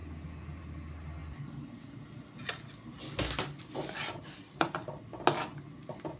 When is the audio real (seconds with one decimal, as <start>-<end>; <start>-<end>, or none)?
0.0-6.2